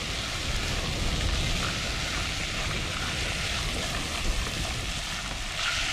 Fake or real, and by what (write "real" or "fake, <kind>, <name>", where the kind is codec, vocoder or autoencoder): real